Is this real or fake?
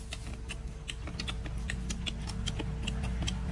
real